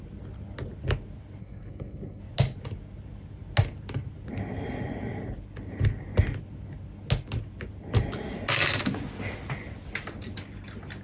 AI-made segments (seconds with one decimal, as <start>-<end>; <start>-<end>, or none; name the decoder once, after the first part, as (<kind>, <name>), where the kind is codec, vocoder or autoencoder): 1.4-2.2 (codec, SNAC)